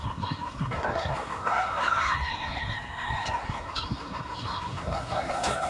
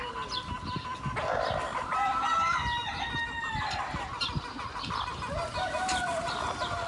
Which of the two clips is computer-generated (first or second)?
first